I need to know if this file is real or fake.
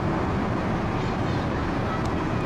real